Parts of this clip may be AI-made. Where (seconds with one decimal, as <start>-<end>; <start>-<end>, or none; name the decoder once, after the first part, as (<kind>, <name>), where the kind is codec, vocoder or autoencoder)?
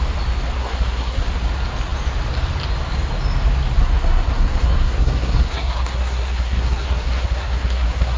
0.6-1.3 (codec, SNAC); 3.8-8.2